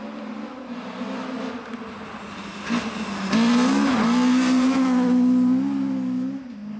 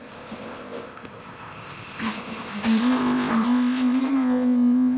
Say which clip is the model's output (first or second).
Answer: second